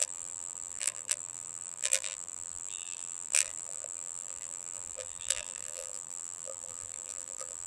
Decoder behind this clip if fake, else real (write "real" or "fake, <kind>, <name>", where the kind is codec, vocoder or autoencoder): fake, vocoder, BigVGAN v2